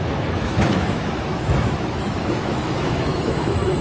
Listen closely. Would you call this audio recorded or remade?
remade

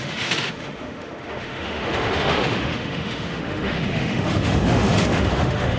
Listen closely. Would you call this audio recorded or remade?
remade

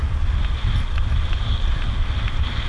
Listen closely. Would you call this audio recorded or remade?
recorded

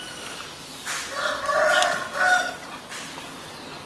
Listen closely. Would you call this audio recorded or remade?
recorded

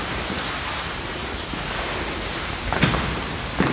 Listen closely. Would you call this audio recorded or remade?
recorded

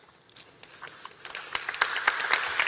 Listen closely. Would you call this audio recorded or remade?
recorded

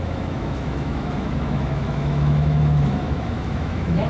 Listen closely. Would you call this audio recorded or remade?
remade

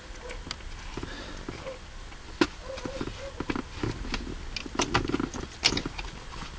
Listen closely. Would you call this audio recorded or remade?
recorded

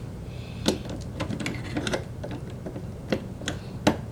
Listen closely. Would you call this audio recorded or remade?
recorded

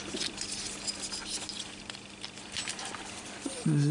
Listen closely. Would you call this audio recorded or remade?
recorded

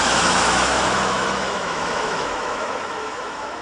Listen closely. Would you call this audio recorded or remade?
remade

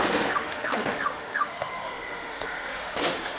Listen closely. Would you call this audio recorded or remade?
remade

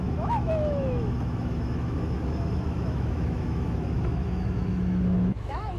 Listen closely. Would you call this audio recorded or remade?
remade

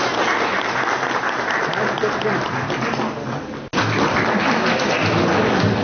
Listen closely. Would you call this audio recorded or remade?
recorded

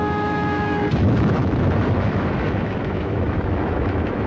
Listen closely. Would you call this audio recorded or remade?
remade